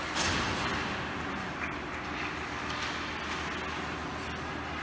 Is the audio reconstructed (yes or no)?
no